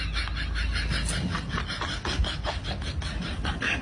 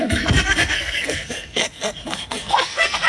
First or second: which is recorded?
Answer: first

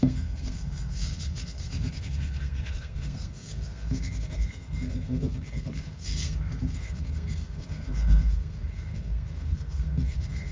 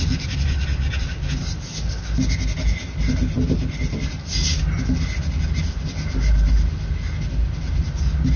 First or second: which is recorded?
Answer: second